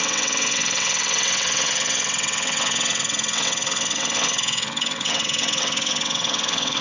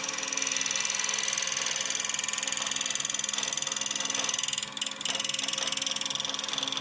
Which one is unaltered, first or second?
second